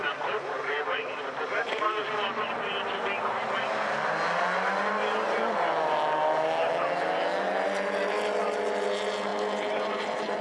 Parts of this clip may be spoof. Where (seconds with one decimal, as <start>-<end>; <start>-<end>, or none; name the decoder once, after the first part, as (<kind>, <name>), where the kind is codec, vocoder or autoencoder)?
none